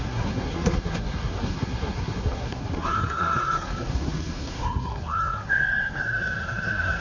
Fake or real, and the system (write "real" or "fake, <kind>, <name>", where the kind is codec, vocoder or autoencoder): fake, codec, SNAC